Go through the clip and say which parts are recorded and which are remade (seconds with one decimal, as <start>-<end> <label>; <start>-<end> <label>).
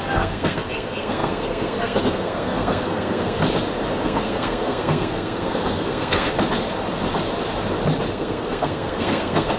0.0-3.4 remade; 3.4-4.0 recorded; 4.0-6.3 remade; 6.3-8.1 recorded; 8.1-9.6 remade